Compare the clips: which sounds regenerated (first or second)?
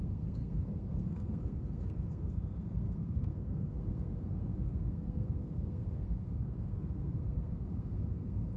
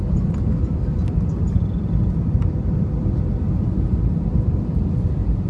first